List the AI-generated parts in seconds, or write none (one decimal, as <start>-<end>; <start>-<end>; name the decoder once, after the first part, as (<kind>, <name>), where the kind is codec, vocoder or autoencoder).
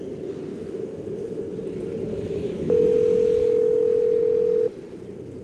0.5-1.5 (autoencoder, DAC-VAE); 2.1-2.8; 3.4-4.2